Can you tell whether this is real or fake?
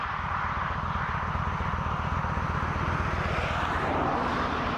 real